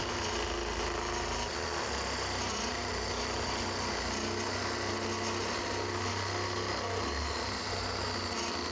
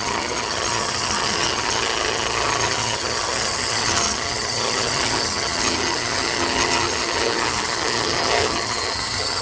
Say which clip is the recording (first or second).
first